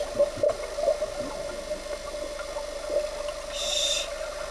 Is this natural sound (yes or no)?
yes